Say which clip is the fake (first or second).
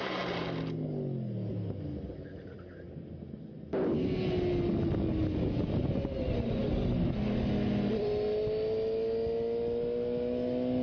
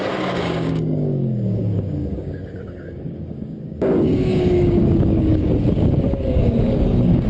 second